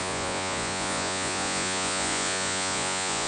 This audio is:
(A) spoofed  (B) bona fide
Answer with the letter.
A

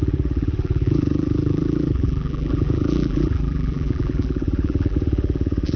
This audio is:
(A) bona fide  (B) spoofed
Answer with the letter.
B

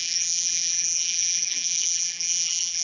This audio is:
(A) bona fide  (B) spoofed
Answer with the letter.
B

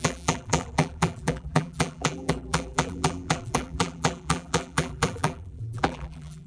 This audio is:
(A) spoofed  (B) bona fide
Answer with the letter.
A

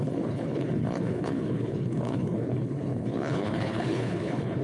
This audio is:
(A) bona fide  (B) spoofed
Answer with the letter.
B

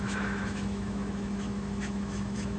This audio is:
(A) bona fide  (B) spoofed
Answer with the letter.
B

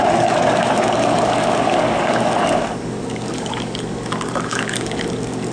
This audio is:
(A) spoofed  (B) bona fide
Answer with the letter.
A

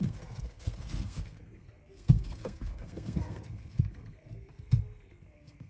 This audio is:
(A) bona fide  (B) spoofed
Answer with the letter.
B